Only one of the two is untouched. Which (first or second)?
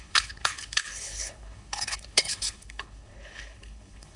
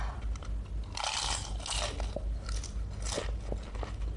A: second